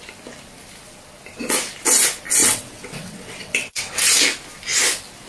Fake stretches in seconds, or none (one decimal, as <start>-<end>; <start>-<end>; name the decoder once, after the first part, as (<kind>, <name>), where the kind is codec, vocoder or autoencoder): 2.4-4.2 (vocoder, WaveNeXt)